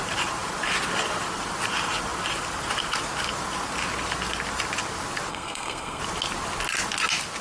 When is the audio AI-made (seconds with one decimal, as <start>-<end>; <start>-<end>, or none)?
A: 5.3-6.0